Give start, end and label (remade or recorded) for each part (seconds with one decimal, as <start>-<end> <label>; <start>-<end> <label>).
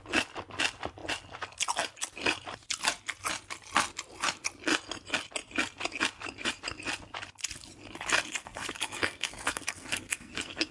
0.0-8.4 recorded; 8.4-10.7 remade